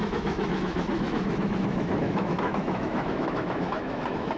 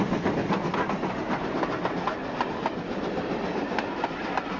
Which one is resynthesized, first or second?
first